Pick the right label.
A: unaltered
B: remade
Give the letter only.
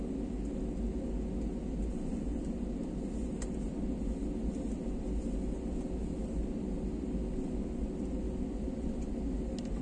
A